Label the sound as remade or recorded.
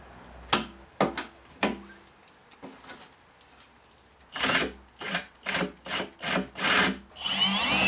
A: recorded